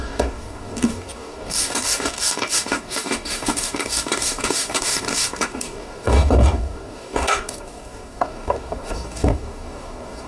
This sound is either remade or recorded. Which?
remade